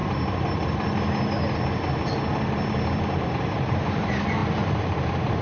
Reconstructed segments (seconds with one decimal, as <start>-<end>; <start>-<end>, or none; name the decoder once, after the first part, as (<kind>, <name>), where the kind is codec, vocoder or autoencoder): 3.2-5.4 (vocoder, BigVGAN v2)

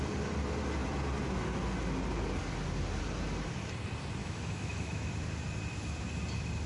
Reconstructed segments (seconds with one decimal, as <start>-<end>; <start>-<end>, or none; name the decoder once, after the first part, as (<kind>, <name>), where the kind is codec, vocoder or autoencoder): 4.2-5.1 (autoencoder, DAC-VAE)

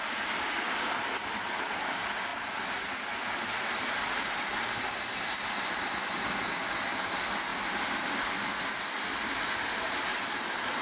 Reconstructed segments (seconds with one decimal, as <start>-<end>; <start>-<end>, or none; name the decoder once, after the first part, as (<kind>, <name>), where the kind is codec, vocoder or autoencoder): 10.1-10.8 (vocoder, BigVGAN v2)

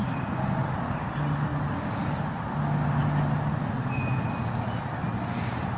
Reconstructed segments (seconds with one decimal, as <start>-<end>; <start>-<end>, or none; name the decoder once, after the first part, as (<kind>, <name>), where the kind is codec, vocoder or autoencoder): none

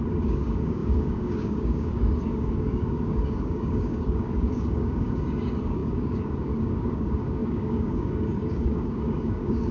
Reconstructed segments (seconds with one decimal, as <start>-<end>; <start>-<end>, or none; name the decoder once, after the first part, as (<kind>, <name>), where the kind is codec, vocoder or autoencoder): 0.0-9.7 (codec, DAC)

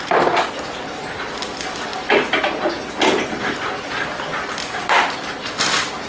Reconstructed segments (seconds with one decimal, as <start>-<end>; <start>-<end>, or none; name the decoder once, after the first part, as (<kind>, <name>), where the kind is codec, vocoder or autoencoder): none